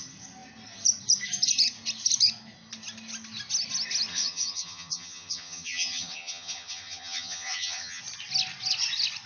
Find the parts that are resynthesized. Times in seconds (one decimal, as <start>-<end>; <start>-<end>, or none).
4.1-8.0